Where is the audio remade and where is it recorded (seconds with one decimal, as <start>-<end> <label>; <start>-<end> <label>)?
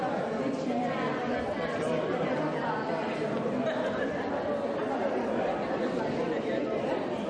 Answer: 0.0-7.3 recorded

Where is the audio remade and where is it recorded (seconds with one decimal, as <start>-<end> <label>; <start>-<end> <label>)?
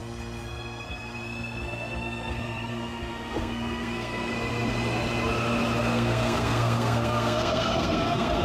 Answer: 0.0-4.3 remade; 4.3-5.8 recorded; 5.8-8.4 remade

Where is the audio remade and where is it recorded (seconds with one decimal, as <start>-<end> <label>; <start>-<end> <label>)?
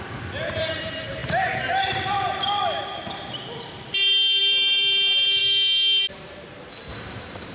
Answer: 0.0-5.4 remade; 5.4-6.9 recorded; 6.9-7.5 remade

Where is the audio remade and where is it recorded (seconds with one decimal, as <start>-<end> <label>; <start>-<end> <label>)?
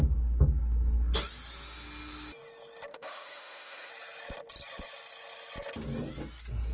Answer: 0.0-2.9 recorded; 2.9-3.9 remade; 3.9-6.7 recorded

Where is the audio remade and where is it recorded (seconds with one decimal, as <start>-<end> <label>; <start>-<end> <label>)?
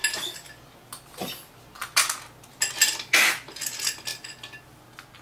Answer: 0.0-5.2 recorded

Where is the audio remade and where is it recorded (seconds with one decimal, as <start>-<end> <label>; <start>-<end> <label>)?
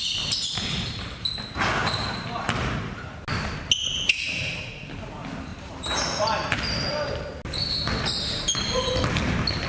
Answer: 0.0-1.8 recorded; 1.8-3.2 remade; 3.2-5.5 recorded; 5.5-7.2 remade; 7.2-9.7 recorded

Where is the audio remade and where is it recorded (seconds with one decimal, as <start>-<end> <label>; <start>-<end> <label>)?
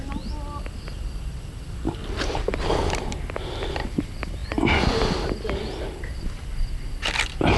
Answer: 0.0-7.6 recorded